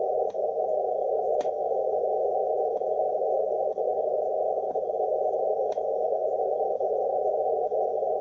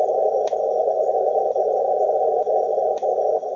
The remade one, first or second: first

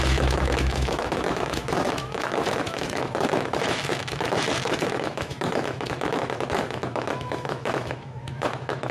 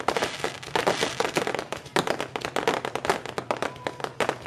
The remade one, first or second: first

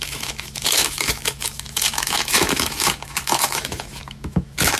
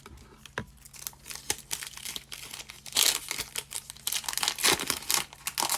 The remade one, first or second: first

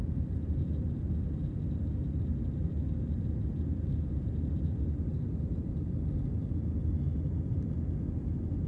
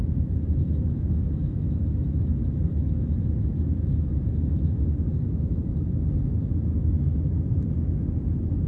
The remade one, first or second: second